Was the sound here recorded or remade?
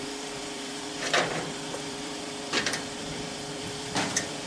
remade